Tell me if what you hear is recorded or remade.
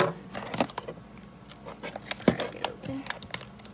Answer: recorded